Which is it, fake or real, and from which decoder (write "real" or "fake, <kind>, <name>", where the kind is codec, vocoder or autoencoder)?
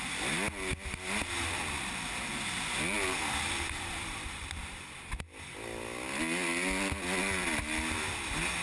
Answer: real